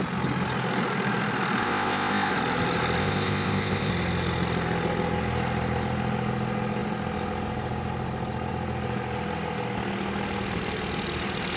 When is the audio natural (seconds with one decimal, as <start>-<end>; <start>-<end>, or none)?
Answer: 0.0-1.6; 2.3-3.0; 3.9-11.6